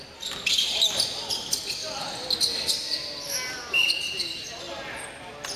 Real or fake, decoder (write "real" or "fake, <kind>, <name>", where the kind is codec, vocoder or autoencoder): real